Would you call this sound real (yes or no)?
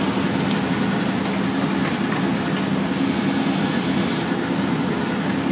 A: yes